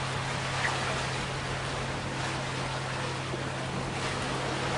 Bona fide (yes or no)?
yes